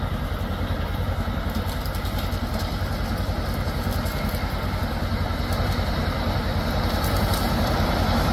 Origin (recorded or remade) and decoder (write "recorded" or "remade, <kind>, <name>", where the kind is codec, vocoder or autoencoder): recorded